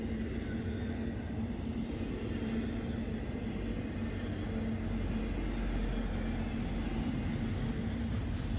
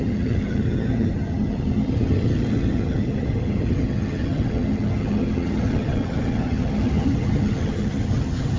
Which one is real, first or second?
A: first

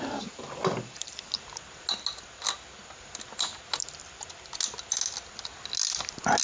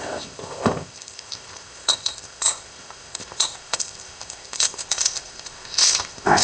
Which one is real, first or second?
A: first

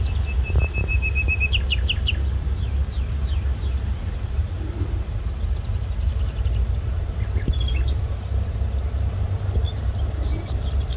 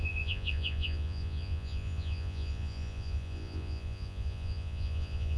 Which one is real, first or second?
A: first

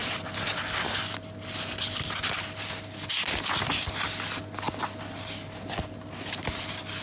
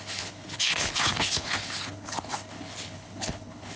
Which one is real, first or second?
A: first